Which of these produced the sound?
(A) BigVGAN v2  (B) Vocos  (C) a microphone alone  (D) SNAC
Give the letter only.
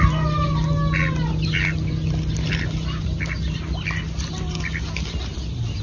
C